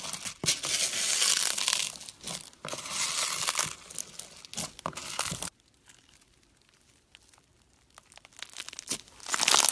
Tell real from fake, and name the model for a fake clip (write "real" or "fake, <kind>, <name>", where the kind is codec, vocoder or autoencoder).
real